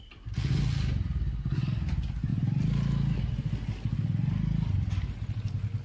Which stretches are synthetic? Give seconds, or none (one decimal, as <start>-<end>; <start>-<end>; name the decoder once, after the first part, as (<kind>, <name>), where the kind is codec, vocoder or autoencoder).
none